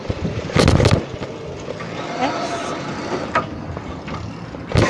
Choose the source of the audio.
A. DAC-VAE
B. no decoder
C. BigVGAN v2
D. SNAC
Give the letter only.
B